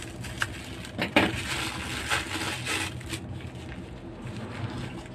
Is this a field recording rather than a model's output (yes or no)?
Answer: yes